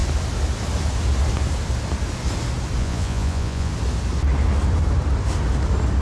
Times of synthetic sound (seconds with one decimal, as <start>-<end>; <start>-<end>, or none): 2.8-3.7